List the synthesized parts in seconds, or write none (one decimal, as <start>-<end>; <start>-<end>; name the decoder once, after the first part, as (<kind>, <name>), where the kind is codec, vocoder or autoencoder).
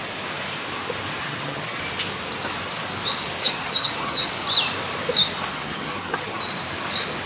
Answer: 1.2-1.8 (vocoder, HiFi-GAN); 3.4-4.3; 5.5-6.4